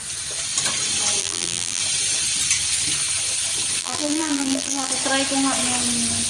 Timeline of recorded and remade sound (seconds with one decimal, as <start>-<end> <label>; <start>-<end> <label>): 0.0-1.2 recorded; 1.2-1.8 remade; 1.8-3.8 recorded; 3.8-4.9 remade; 4.9-6.3 recorded